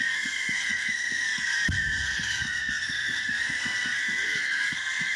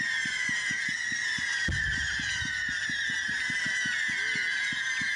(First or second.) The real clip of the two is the second